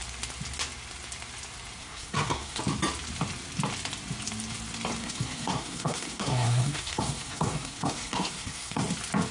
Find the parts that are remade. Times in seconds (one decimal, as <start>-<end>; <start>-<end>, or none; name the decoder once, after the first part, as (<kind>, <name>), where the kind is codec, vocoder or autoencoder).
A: 1.8-2.6 (codec, SNAC); 5.0-8.8